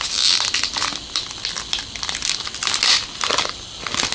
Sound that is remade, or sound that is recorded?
recorded